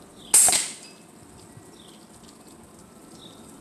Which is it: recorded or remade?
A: recorded